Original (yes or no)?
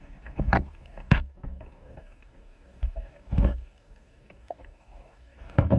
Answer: no